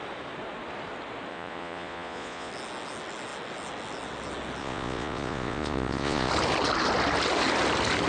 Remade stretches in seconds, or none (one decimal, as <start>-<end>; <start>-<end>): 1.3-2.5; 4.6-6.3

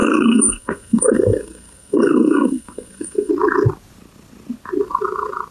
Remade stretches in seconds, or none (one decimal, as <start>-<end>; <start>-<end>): 0.0-3.3

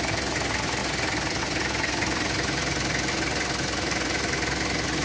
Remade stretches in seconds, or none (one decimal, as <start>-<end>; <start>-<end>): none

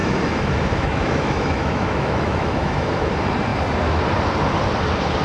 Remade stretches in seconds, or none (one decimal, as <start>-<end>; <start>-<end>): 0.0-3.1

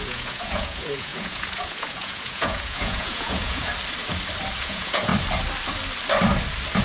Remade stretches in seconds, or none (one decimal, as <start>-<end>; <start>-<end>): 0.0-3.7; 4.6-5.1